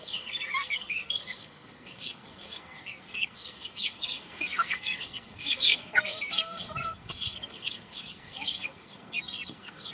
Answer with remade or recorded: remade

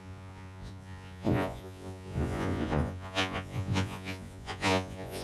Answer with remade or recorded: remade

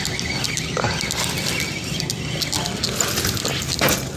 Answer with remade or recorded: recorded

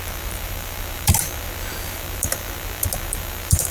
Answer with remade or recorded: remade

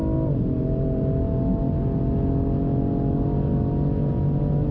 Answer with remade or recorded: recorded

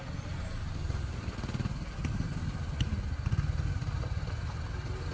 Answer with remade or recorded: recorded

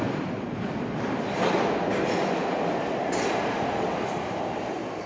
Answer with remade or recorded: recorded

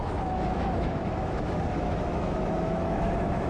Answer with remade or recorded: remade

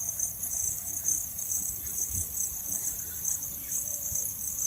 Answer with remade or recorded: remade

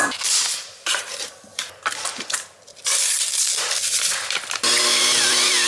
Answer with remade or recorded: remade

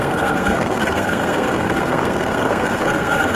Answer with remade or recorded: remade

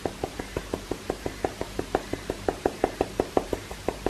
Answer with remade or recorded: remade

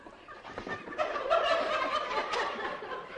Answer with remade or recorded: remade